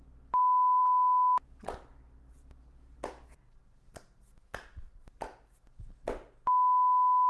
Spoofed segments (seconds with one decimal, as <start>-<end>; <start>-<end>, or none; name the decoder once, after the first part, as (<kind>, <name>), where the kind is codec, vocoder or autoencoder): none